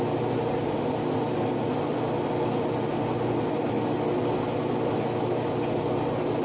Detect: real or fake real